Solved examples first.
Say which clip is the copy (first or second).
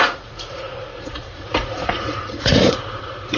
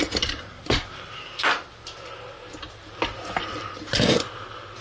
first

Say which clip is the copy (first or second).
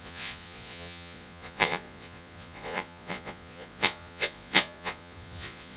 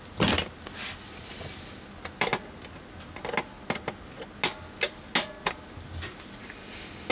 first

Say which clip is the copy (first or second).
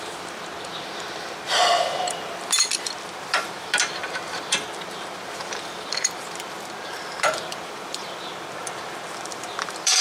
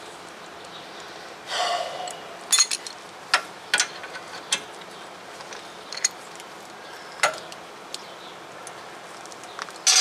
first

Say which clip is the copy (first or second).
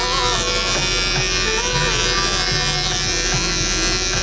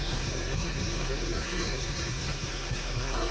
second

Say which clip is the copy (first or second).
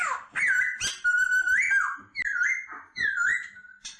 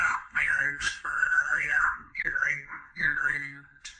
second